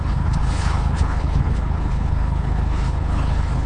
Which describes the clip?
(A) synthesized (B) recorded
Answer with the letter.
A